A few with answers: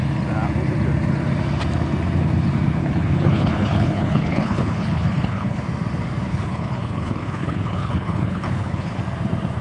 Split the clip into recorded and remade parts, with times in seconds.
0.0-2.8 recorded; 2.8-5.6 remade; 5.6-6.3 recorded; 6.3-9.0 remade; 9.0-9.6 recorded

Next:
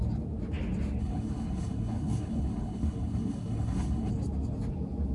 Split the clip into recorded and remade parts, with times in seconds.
0.0-1.0 recorded; 1.0-4.1 remade; 4.1-5.1 recorded

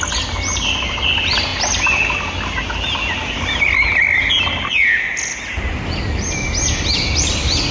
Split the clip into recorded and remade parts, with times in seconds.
0.0-7.7 recorded

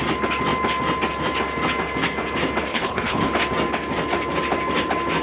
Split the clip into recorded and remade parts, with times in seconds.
0.0-2.7 recorded; 2.7-3.3 remade; 3.3-5.2 recorded

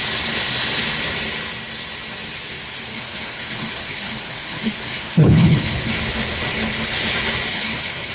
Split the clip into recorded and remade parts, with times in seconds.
0.0-2.9 recorded; 2.9-5.9 remade; 5.9-7.5 recorded; 7.5-8.1 remade

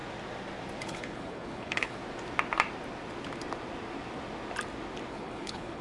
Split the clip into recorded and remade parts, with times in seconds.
0.0-0.8 recorded; 0.8-2.0 remade; 2.0-5.1 recorded; 5.1-5.8 remade